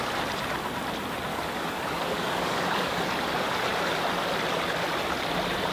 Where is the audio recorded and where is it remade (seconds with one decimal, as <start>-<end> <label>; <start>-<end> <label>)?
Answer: 0.0-1.3 recorded; 1.3-3.0 remade; 3.0-5.7 recorded